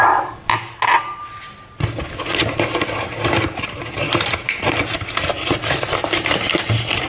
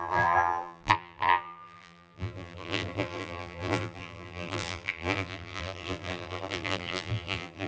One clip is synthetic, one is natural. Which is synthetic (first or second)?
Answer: second